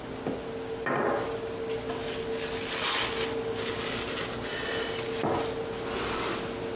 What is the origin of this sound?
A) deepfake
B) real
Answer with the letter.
B